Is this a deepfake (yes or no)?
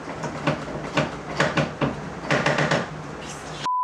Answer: no